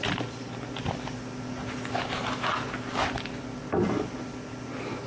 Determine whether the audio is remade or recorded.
recorded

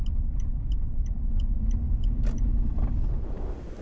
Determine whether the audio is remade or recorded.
recorded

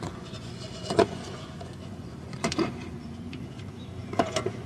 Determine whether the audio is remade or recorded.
remade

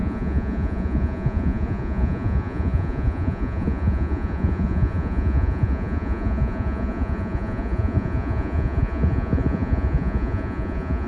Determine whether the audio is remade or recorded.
remade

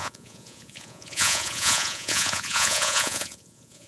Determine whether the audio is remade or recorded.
remade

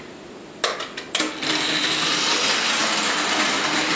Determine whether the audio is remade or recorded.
recorded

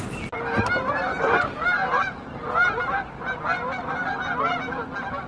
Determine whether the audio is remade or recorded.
recorded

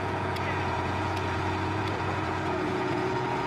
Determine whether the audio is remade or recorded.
remade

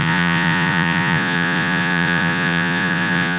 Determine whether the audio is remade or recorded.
remade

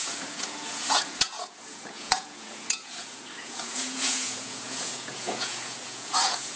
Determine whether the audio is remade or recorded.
remade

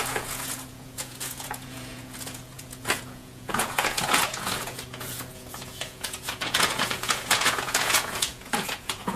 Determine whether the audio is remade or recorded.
remade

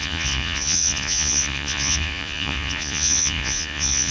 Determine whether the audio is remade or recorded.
remade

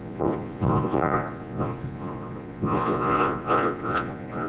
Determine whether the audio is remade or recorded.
remade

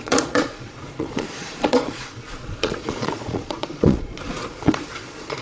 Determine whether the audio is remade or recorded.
remade